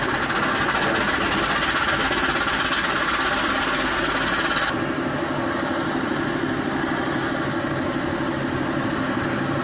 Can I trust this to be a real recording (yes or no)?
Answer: yes